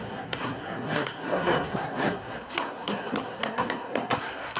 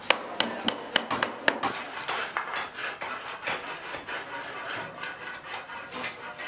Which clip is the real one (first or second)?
second